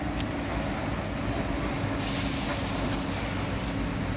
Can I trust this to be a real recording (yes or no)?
yes